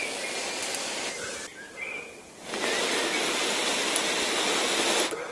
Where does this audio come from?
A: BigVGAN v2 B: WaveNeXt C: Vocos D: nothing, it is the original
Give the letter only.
D